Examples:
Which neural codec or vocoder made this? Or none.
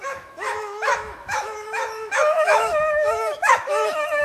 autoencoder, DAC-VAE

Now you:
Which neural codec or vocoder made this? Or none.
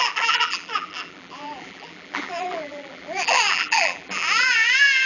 vocoder, BigVGAN v2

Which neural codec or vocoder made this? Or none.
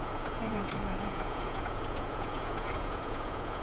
vocoder, Vocos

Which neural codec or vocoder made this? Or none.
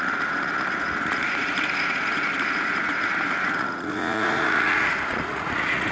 vocoder, Vocos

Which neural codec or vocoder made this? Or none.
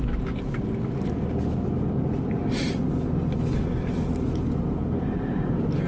none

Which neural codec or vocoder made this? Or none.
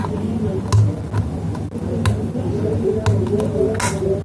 none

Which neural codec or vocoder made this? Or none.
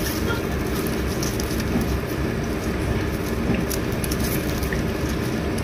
none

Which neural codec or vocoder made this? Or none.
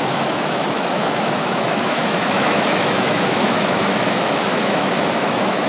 autoencoder, DAC-VAE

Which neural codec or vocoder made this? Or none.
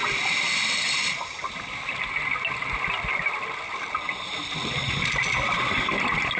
none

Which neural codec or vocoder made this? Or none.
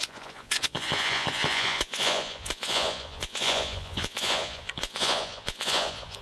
vocoder, Vocos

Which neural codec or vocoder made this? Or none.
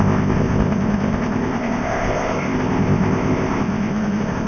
codec, ZipCodec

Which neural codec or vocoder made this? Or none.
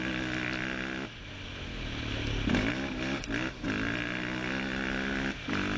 none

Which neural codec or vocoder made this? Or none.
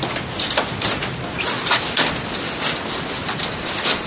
none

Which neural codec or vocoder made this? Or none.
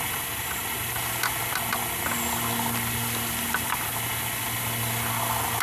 none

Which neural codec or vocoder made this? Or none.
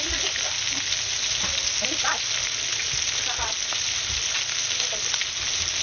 none